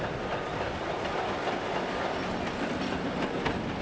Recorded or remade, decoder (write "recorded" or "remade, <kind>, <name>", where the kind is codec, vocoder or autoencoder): recorded